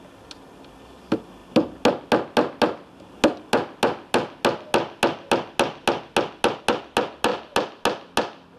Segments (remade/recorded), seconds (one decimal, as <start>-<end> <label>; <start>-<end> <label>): 0.0-8.6 recorded